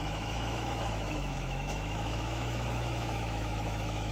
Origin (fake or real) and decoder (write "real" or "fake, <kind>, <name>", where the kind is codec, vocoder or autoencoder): fake, autoencoder, DAC-VAE